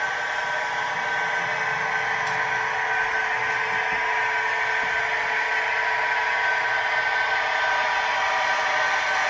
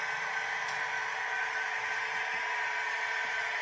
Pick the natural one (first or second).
first